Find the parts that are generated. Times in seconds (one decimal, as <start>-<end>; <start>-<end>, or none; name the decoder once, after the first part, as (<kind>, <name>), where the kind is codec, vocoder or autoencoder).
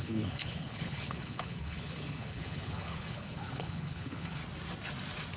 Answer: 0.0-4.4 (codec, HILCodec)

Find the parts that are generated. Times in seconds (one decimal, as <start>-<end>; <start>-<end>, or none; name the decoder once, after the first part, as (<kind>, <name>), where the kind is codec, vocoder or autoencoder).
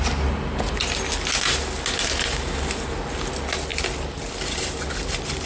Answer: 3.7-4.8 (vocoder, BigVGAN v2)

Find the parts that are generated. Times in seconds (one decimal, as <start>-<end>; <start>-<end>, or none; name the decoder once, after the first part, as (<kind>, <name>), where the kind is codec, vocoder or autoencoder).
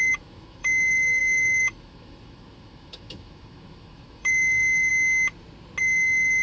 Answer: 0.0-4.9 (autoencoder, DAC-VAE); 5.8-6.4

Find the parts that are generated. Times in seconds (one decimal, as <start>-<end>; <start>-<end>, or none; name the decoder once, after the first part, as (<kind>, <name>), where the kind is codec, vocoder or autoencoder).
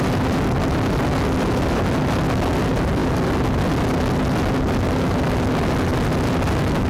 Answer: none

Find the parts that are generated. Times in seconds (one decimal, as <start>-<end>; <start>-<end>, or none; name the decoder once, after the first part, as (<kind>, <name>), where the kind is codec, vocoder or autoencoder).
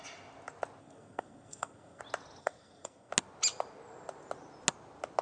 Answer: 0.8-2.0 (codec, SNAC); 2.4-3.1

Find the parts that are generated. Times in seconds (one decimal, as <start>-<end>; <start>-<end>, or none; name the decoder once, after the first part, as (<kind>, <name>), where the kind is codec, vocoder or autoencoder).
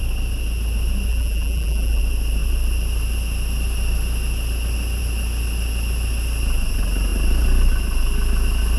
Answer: 1.1-2.0 (vocoder, BigVGAN v2)